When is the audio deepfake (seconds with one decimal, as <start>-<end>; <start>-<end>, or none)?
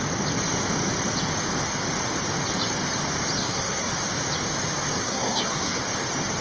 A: 3.4-3.9; 5.0-5.8